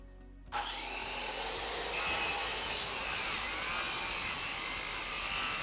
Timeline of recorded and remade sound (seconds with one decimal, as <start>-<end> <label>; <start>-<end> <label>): 0.0-1.0 recorded; 1.0-1.6 remade; 1.6-5.6 recorded